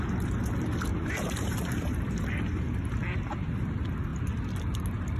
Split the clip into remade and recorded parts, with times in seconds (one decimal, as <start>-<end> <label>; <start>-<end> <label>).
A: 0.0-0.9 recorded; 0.9-3.0 remade; 3.0-5.2 recorded